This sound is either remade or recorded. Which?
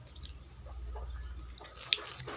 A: recorded